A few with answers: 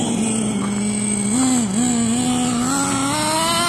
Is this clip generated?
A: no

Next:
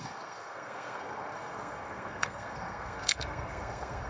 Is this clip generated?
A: yes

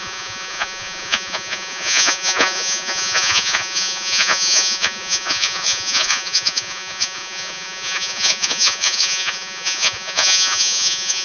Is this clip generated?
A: yes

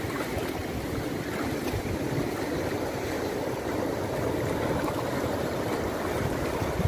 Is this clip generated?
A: no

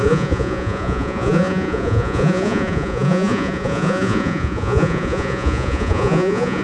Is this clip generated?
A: yes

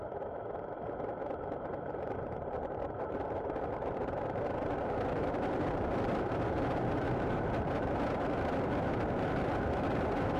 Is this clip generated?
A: yes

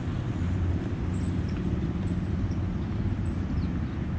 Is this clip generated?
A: yes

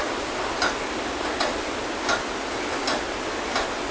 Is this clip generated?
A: no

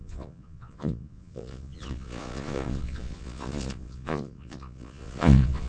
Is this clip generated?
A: yes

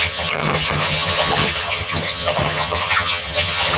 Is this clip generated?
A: yes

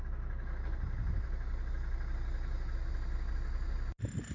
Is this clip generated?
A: no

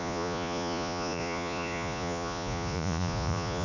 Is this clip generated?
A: yes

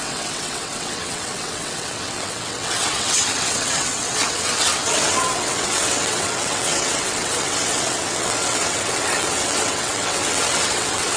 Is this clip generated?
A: yes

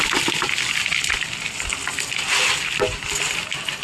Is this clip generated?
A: no